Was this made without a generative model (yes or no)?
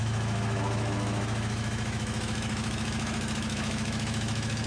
no